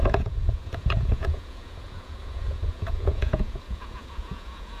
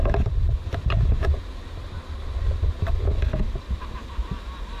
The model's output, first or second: first